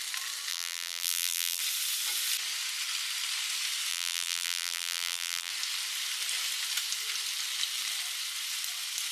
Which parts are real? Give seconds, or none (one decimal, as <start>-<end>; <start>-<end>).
0.0-0.5; 1.6-3.9; 5.5-9.1

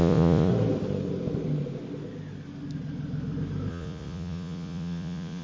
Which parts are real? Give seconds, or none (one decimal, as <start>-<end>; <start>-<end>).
0.5-3.7

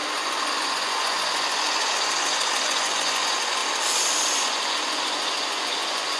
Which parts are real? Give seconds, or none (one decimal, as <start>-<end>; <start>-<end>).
3.6-4.4